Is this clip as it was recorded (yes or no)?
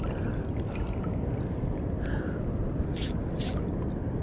yes